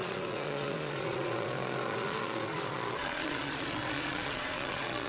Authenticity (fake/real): fake